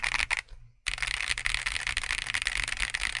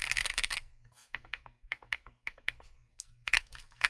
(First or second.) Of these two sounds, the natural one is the first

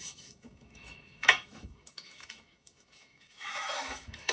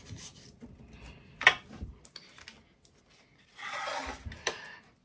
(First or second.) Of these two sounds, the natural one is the second